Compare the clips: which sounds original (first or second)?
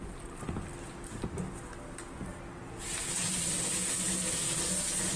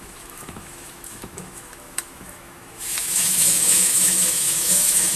first